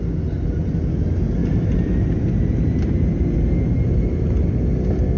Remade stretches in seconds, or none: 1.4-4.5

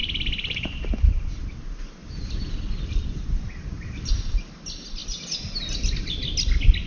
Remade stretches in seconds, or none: 0.0-0.9; 2.0-4.1

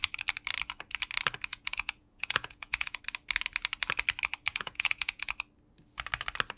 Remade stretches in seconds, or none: 1.5-3.0; 4.5-5.3

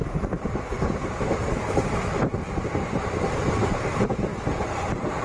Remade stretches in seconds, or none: 0.0-2.3; 3.7-4.3; 4.8-5.2

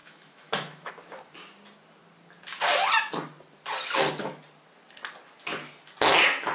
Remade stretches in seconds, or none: 0.0-0.9

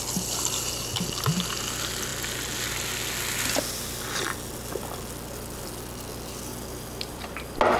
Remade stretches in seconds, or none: none

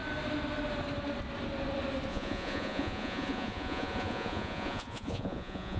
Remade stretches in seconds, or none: 2.1-5.8